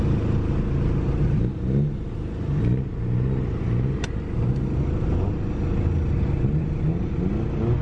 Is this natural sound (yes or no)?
yes